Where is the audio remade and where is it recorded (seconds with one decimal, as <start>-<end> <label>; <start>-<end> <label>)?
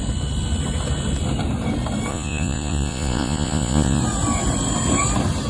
0.0-2.1 recorded; 2.1-4.0 remade; 4.0-5.5 recorded